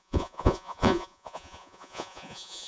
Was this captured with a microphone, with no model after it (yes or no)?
no